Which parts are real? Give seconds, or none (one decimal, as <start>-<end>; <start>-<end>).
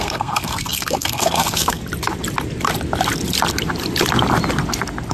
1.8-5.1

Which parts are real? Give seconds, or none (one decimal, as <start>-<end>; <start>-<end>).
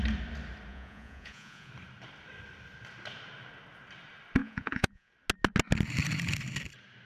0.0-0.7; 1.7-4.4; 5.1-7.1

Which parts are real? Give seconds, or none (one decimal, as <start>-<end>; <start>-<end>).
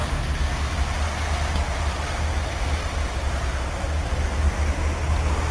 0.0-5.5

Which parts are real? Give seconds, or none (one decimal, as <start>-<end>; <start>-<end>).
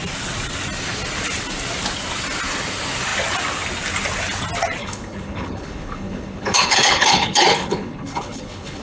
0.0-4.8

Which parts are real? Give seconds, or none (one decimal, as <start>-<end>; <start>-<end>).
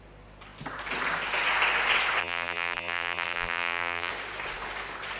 0.0-2.2; 4.1-5.2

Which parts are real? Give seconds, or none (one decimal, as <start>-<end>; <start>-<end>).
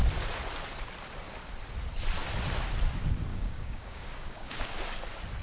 0.0-3.3; 4.8-5.4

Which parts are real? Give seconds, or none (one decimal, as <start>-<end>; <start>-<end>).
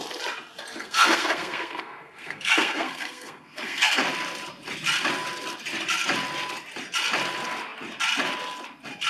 0.0-0.8; 4.0-9.1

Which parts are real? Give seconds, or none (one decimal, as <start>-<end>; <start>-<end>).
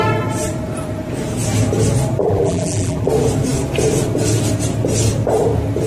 0.0-2.2; 3.1-5.9